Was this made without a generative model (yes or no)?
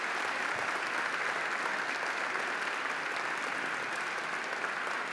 yes